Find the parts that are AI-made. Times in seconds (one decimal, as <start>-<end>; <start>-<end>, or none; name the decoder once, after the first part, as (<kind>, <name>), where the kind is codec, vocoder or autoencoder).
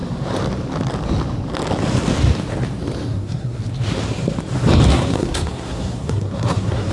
3.1-3.6 (codec, SNAC); 4.9-6.9